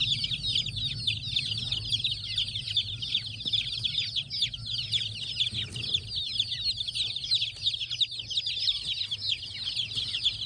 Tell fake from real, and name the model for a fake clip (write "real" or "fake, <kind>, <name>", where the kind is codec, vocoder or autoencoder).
real